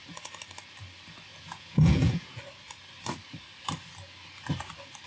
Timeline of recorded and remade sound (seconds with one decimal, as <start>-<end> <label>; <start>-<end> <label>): 0.0-1.3 recorded; 1.3-2.4 remade; 2.4-5.1 recorded